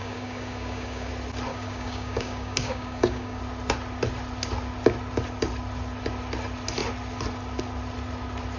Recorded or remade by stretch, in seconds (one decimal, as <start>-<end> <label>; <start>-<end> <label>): 0.0-1.1 remade; 1.1-1.5 recorded; 1.5-3.4 remade; 3.4-8.6 recorded